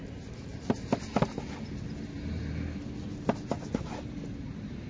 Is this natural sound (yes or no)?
yes